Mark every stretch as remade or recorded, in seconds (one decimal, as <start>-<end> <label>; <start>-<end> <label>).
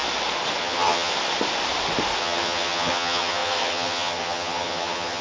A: 0.0-0.6 recorded; 0.6-1.1 remade; 1.1-2.2 recorded; 2.2-5.2 remade